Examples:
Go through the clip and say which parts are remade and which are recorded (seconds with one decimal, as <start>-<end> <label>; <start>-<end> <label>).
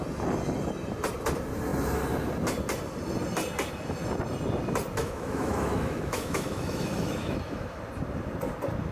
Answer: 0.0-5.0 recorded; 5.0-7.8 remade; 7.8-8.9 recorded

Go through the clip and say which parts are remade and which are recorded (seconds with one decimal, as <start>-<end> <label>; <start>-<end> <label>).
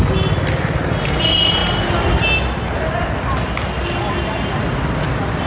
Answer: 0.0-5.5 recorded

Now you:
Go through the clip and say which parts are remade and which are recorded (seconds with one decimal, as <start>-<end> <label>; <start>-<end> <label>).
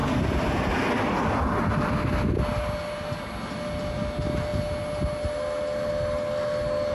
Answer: 0.0-6.9 recorded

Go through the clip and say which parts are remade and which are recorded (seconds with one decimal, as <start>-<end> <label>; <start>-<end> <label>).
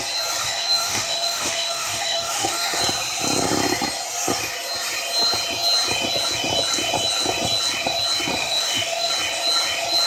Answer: 0.0-0.4 recorded; 0.4-2.8 remade; 2.8-8.4 recorded; 8.4-9.1 remade; 9.1-10.1 recorded